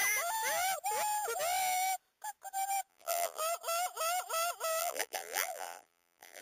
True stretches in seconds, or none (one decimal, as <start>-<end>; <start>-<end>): 0.0-2.9; 3.4-4.8